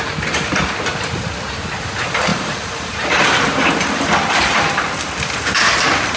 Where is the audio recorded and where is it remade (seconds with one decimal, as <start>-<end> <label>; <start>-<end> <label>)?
0.0-6.2 recorded